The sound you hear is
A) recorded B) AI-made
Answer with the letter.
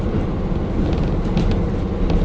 A